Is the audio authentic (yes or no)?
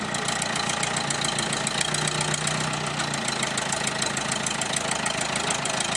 yes